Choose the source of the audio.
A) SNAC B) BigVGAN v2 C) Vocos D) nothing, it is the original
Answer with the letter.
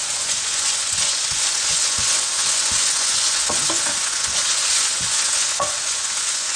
C